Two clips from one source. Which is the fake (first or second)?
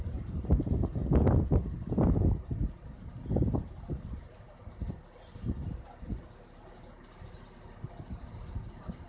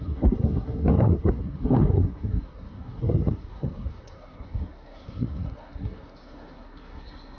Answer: second